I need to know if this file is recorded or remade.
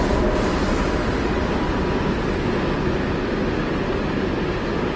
recorded